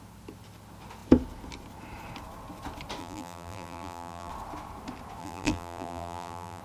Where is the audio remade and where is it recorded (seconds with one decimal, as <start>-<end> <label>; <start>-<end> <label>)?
0.0-3.0 recorded; 3.0-4.3 remade; 4.3-5.2 recorded; 5.2-6.6 remade